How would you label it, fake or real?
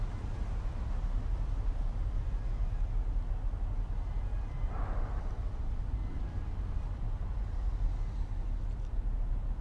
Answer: real